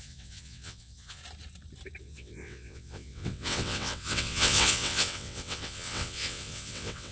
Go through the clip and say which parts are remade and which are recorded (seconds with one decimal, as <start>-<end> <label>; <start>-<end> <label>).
0.0-1.2 remade; 1.2-2.0 recorded; 2.0-7.1 remade